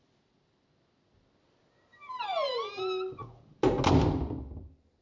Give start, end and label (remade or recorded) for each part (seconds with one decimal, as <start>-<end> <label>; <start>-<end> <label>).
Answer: 0.0-1.9 recorded; 1.9-2.5 remade; 2.5-5.0 recorded